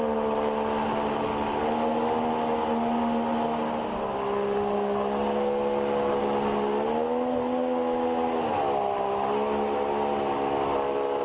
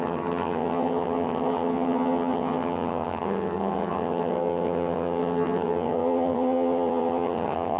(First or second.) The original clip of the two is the first